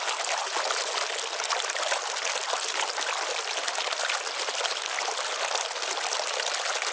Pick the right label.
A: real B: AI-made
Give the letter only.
A